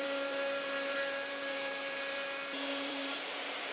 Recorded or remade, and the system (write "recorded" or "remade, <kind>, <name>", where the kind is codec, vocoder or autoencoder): remade, vocoder, BigVGAN v2